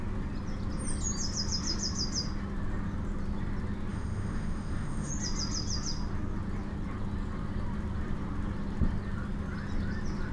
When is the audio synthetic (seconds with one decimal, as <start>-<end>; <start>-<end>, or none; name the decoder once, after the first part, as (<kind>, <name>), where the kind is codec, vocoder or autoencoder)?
3.9-5.1 (autoencoder, DAC-VAE)